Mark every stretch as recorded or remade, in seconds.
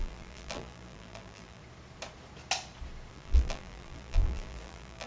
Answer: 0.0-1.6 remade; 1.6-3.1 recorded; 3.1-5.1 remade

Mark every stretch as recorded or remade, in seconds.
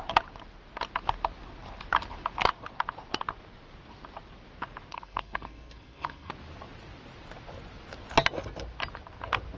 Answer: 0.0-4.9 recorded; 4.9-6.3 remade; 6.3-9.6 recorded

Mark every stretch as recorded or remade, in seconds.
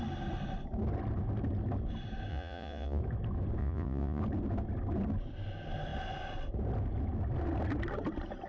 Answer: 0.0-2.3 recorded; 2.3-3.0 remade; 3.0-3.6 recorded; 3.6-4.2 remade; 4.2-8.5 recorded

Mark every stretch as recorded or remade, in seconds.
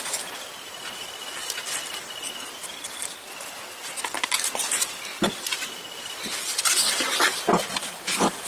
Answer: 0.0-8.5 recorded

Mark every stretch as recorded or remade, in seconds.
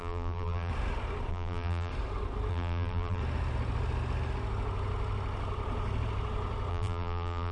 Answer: 0.0-0.7 remade; 0.7-1.3 recorded; 1.3-1.9 remade; 1.9-2.5 recorded; 2.5-3.2 remade; 3.2-6.7 recorded; 6.7-7.5 remade